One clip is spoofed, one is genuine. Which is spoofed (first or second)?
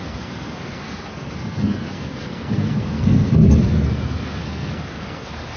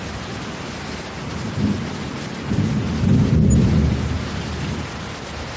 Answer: first